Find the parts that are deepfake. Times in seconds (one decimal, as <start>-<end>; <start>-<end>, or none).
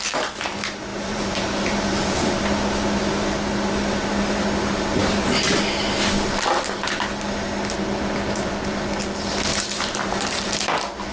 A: 0.9-2.2; 9.5-10.5